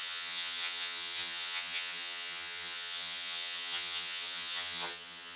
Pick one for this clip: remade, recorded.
remade